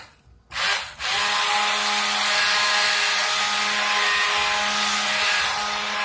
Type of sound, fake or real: real